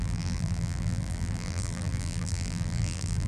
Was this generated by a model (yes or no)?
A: yes